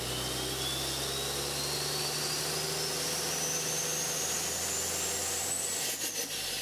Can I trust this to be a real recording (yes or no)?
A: yes